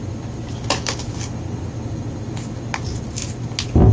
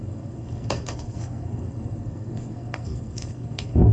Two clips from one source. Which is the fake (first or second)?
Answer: second